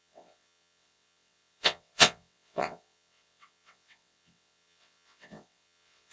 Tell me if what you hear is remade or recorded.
remade